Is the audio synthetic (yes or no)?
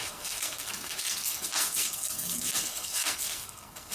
yes